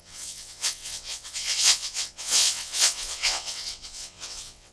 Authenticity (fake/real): fake